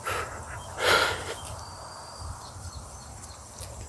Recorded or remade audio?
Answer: recorded